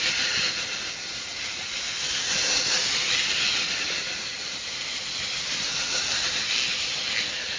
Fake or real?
real